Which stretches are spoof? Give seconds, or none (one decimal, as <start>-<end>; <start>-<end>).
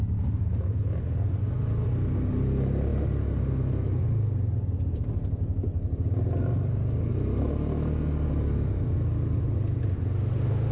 none